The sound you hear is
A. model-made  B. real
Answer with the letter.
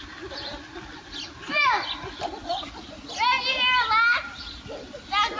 B